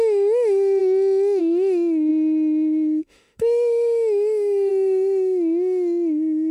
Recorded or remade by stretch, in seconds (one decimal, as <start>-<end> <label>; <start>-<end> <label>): 0.0-0.8 remade; 0.8-1.4 recorded; 1.4-6.5 remade